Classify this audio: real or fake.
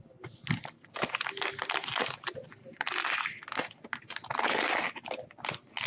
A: real